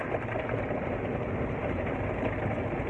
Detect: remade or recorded remade